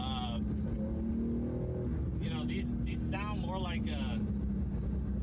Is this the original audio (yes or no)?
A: yes